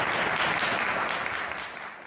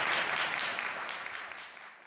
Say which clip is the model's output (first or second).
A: second